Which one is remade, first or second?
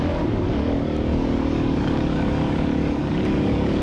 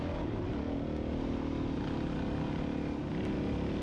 first